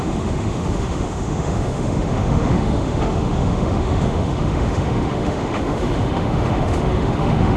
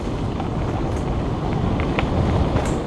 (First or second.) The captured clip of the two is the second